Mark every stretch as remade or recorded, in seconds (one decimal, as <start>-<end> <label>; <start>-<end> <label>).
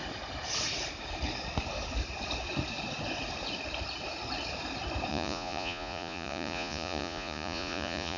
0.0-5.1 recorded; 5.1-8.2 remade